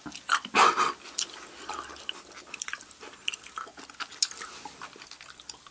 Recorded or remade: recorded